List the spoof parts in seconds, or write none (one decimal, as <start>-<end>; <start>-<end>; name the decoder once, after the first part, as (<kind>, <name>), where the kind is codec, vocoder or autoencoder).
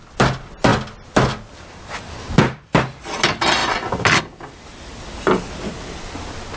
none